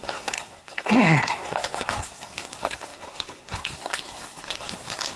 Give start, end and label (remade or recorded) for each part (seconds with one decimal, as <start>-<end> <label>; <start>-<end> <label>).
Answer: 0.0-5.2 remade